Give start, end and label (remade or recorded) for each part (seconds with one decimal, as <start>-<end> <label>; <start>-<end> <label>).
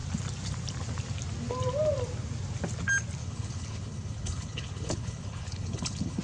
0.0-3.2 recorded; 3.2-6.2 remade